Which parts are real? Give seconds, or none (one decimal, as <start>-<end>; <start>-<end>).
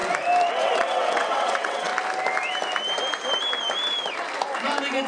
0.0-0.5; 1.9-5.1